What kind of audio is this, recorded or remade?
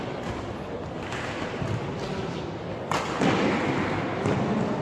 recorded